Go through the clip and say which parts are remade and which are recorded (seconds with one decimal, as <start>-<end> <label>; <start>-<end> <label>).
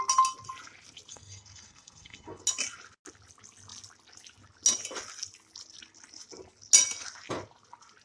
0.0-1.1 recorded; 1.1-2.4 remade; 2.4-8.0 recorded